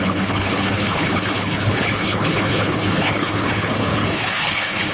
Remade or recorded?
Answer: remade